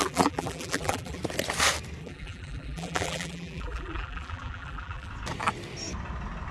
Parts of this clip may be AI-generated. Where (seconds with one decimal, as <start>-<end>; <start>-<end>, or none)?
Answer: 0.0-1.2; 2.0-5.1

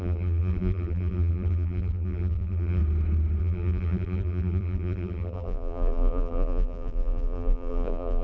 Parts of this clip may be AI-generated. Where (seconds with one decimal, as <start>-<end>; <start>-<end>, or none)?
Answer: 0.0-2.8; 3.4-8.2